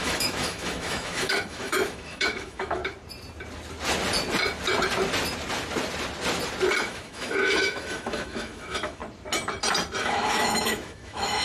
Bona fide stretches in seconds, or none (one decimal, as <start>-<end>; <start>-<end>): 2.8-6.8; 9.0-10.0